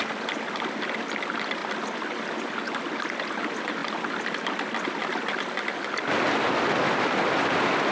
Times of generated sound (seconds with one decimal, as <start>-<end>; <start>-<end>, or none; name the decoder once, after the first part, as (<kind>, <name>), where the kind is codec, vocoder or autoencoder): none